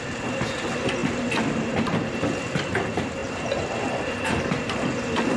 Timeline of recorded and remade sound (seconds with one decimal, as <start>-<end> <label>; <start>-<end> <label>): 0.0-5.4 recorded